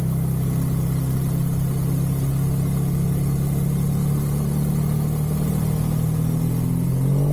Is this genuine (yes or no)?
yes